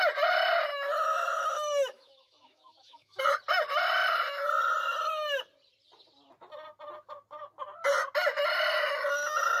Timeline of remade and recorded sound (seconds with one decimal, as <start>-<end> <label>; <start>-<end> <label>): 0.0-0.7 recorded; 0.7-3.2 remade; 3.2-9.6 recorded